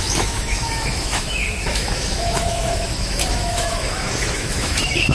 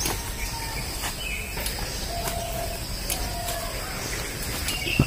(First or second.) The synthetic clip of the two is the first